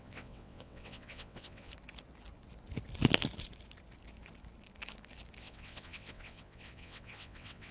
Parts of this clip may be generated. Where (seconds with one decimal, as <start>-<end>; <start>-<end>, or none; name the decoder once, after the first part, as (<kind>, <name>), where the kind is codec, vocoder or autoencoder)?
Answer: 0.0-1.7 (vocoder, WaveNeXt); 5.4-7.7